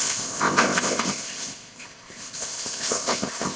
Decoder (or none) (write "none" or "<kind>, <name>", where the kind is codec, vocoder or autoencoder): codec, ZipCodec